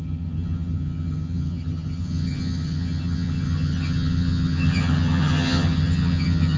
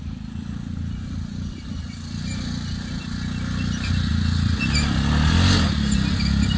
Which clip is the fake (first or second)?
first